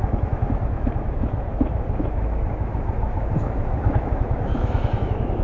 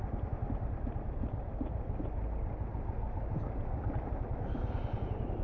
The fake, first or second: first